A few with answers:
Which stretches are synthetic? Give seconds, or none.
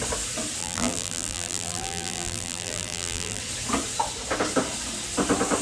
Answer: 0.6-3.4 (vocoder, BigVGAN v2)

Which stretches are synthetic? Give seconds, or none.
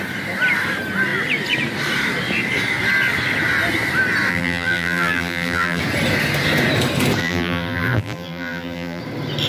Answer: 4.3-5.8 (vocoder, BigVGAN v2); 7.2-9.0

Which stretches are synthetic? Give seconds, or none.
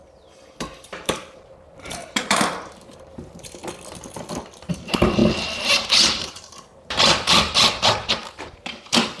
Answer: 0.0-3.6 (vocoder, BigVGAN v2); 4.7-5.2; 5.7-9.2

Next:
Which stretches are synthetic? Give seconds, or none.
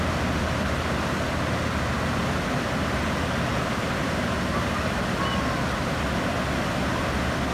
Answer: 3.5-5.2 (vocoder, BigVGAN v2)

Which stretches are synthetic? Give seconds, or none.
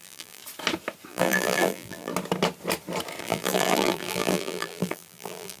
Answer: 0.0-0.4 (vocoder, BigVGAN v2); 1.1-2.1; 3.2-5.6